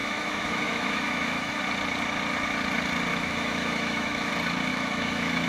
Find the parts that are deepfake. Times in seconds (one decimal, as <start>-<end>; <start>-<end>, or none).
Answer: 0.0-1.6; 3.1-4.3; 4.7-5.5